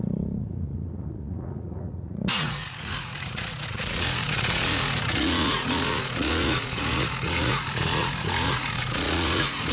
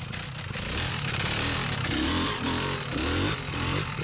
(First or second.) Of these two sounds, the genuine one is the second